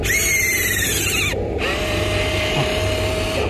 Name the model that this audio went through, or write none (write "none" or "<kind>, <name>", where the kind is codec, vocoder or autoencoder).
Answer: none